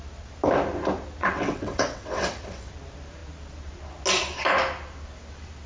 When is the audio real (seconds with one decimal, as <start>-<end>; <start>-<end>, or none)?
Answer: 0.0-1.2; 2.7-5.7